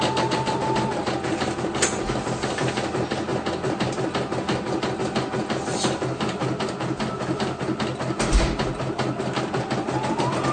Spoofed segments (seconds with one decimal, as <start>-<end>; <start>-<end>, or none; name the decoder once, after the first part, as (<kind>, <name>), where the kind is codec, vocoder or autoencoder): none